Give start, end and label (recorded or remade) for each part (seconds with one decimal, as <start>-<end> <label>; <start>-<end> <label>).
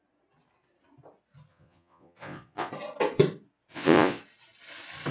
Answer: 0.0-1.5 recorded; 1.5-2.7 remade; 2.7-3.7 recorded; 3.7-4.2 remade; 4.2-5.1 recorded